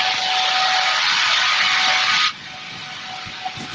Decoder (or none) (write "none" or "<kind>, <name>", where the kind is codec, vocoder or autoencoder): none